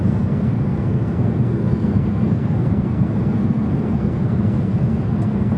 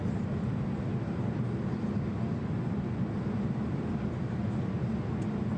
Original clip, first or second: second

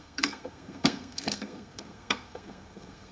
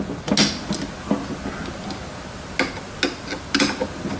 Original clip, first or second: second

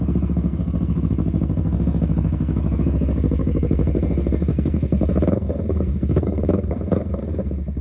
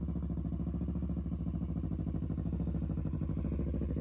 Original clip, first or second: second